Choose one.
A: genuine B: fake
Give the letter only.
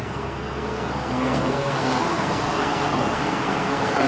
B